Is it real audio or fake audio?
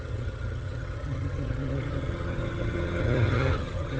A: fake